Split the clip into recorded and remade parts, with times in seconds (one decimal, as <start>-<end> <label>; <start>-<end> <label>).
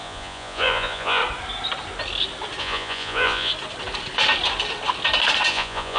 0.0-1.2 remade; 1.2-2.6 recorded; 2.6-3.5 remade; 3.5-5.5 recorded; 5.5-6.0 remade